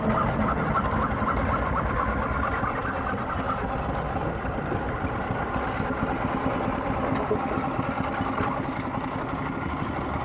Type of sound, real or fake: real